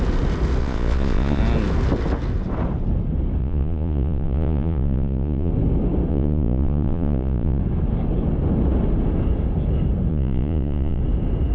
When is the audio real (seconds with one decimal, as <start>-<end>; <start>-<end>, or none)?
0.0-0.6; 1.4-3.4; 5.5-6.1; 7.6-10.1; 11.0-11.5